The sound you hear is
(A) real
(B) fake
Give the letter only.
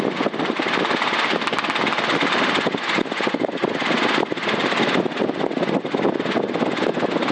A